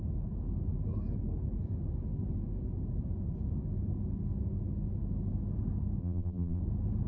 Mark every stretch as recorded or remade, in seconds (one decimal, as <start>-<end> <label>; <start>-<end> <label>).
0.0-6.0 recorded; 6.0-6.6 remade; 6.6-7.1 recorded